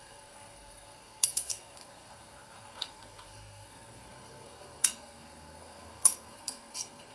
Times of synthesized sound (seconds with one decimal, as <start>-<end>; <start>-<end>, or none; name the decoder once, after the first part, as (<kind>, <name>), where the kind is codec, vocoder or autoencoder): 0.0-7.1 (codec, SNAC)